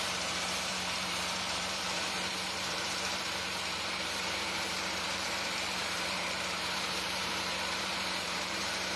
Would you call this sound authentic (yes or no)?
no